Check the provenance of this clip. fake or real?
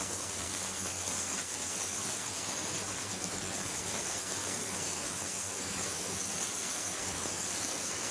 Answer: fake